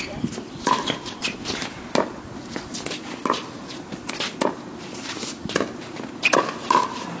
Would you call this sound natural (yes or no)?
yes